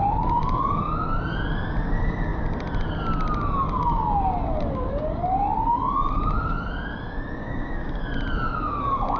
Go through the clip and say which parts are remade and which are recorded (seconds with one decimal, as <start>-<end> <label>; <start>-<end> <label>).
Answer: 0.0-7.4 recorded; 7.4-8.0 remade; 8.0-9.2 recorded